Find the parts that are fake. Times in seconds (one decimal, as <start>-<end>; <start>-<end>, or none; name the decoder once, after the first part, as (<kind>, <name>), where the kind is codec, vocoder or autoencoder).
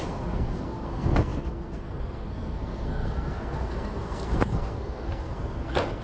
0.0-6.0 (codec, SNAC)